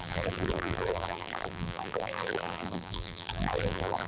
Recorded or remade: remade